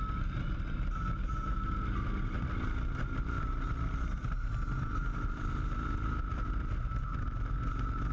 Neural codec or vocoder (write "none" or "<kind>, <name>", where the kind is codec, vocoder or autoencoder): none